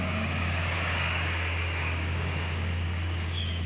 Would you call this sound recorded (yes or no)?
no